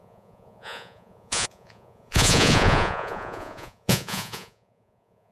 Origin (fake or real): fake